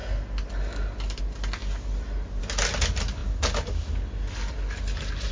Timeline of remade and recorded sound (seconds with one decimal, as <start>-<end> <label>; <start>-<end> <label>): 0.0-5.3 recorded